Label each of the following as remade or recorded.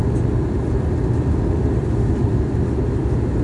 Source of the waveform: recorded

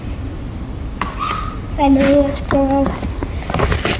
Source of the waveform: recorded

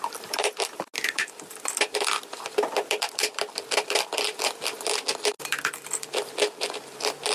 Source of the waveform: recorded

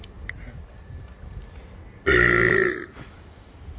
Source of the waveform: recorded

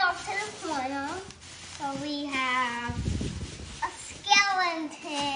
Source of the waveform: recorded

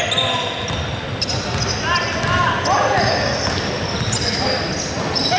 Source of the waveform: recorded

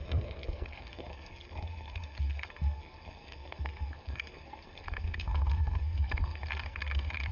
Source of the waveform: remade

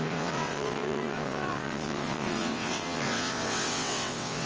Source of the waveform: remade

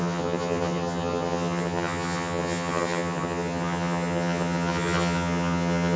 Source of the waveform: remade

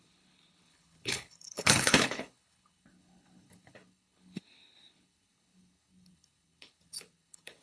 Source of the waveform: remade